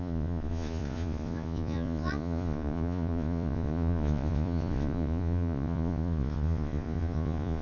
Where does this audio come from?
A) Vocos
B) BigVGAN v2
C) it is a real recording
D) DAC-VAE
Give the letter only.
A